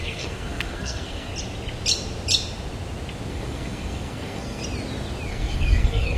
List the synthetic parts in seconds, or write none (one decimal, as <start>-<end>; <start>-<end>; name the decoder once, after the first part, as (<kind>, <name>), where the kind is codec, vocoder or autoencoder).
0.0-1.3 (codec, SNAC); 3.3-4.6; 5.3-6.2